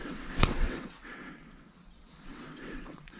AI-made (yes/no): yes